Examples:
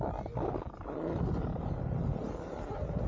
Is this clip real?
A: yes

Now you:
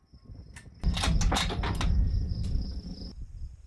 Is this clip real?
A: yes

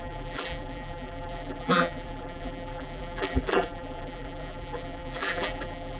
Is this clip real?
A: no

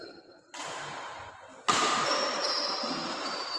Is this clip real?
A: no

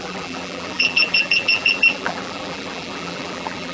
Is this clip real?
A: no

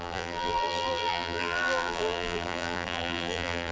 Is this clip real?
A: no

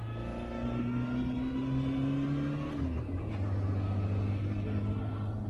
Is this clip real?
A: yes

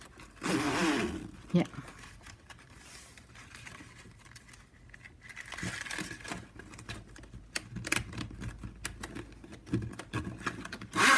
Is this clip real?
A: yes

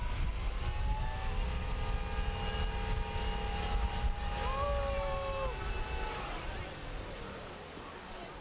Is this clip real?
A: yes